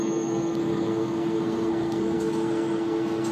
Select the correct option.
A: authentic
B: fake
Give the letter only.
B